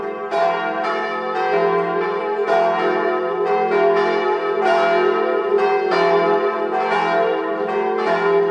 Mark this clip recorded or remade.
recorded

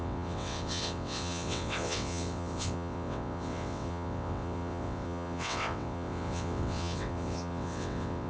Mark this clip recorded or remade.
remade